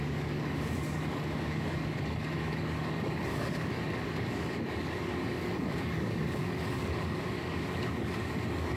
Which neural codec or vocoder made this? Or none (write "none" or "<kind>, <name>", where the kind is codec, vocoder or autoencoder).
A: codec, DAC